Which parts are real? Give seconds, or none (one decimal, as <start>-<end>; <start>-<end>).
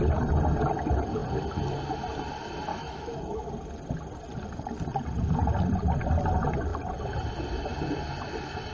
0.0-2.7; 3.5-8.7